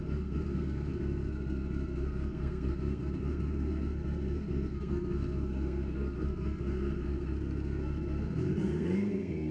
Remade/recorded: remade